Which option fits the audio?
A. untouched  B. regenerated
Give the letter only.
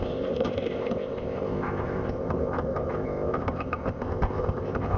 B